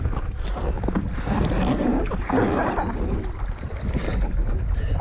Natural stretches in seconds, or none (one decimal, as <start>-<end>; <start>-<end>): 0.0-5.0